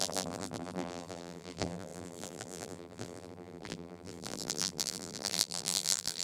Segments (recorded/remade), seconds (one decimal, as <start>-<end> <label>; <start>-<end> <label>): 0.0-6.2 remade